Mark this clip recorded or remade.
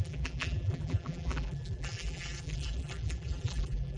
remade